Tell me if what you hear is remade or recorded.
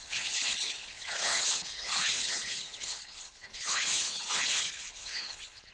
remade